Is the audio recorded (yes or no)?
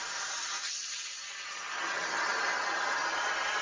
yes